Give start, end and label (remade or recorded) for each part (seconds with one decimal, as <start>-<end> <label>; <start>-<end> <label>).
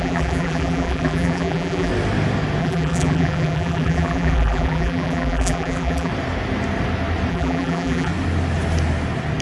0.0-1.9 remade; 1.9-2.6 recorded; 2.6-6.1 remade; 6.1-7.3 recorded; 7.3-8.1 remade; 8.1-9.4 recorded